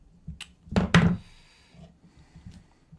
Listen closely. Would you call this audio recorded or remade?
recorded